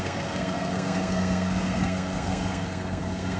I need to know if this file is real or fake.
fake